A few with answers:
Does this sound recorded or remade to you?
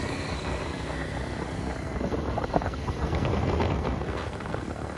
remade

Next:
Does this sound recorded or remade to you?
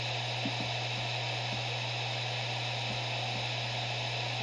recorded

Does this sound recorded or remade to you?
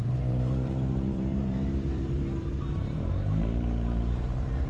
remade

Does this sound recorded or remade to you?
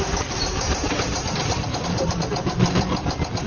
remade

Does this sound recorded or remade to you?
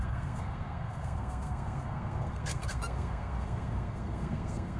remade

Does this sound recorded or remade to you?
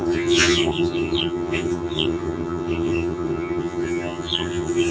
remade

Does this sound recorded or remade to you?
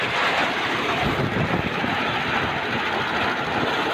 recorded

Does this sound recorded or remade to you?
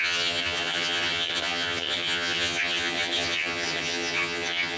remade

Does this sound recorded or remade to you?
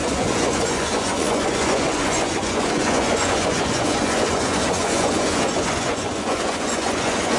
remade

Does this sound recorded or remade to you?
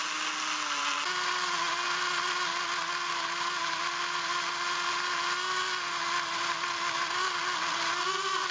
recorded